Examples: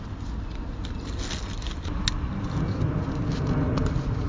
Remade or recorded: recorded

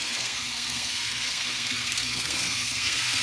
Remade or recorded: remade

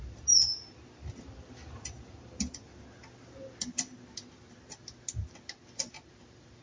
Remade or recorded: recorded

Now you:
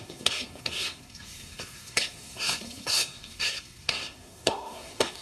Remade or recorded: remade